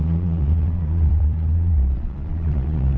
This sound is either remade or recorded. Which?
remade